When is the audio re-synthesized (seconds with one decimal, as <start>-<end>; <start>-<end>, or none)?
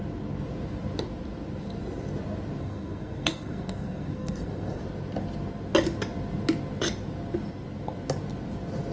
2.6-4.8